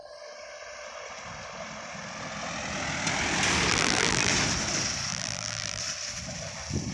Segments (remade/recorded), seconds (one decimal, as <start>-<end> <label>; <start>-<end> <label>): 0.0-3.7 recorded; 3.7-4.3 remade; 4.3-5.1 recorded; 5.1-5.8 remade; 5.8-6.9 recorded